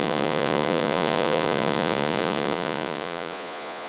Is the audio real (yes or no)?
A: no